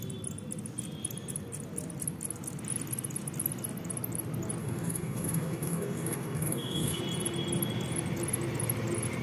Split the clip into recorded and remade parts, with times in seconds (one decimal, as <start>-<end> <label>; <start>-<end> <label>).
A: 0.0-4.6 recorded; 4.6-7.0 remade; 7.0-9.2 recorded